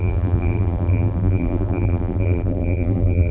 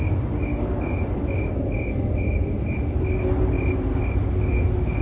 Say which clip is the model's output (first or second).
first